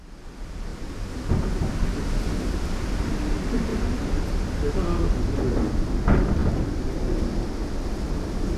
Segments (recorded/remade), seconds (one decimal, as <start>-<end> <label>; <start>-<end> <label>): 0.0-8.6 recorded